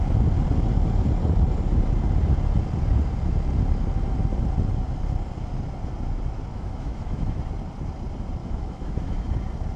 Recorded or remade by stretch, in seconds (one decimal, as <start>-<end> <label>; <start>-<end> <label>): 0.0-6.5 recorded; 6.5-7.4 remade; 7.4-8.4 recorded; 8.4-9.3 remade; 9.3-9.8 recorded